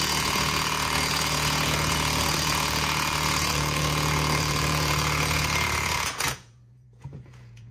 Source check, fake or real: fake